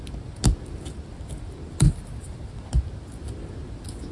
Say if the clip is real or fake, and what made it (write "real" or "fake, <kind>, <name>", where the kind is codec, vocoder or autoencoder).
real